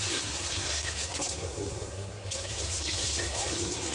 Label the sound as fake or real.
fake